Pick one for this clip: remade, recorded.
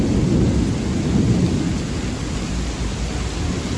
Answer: recorded